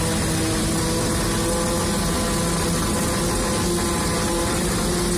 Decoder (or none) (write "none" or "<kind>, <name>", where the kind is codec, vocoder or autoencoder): none